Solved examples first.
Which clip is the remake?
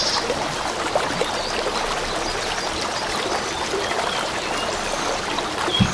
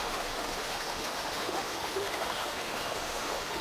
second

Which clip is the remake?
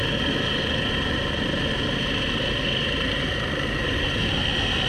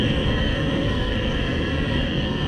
second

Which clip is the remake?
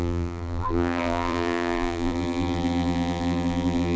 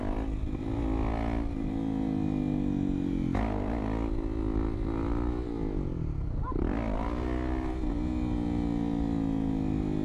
first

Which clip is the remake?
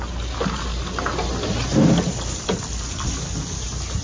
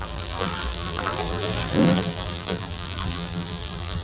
second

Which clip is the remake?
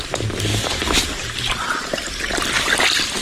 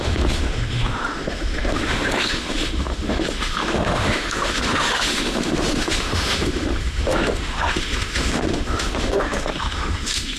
second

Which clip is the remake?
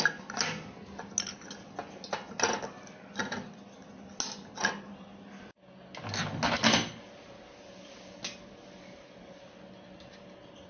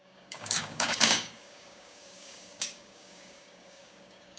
second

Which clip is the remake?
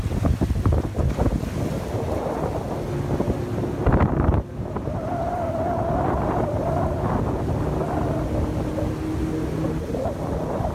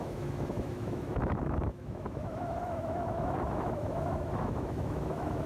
second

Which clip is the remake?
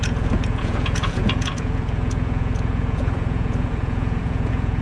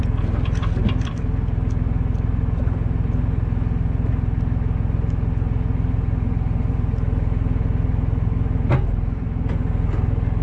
first